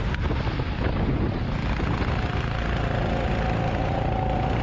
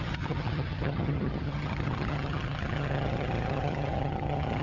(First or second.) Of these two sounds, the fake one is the second